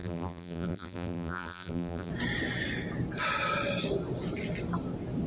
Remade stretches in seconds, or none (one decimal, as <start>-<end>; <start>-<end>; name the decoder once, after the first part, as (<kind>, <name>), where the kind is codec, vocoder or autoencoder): 0.0-2.1 (vocoder, BigVGAN v2)